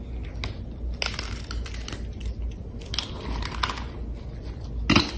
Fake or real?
real